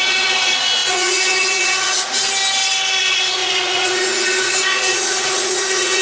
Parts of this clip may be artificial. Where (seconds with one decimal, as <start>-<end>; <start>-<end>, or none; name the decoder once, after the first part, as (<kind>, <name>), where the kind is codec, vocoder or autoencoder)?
0.0-2.2 (vocoder, Vocos); 3.0-6.0